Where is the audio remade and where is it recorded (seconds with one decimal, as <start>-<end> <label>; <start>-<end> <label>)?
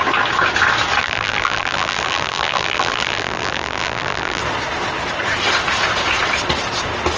0.0-1.0 recorded; 1.0-4.4 remade; 4.4-7.2 recorded